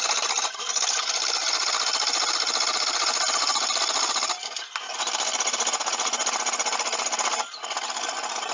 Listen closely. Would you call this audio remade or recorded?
recorded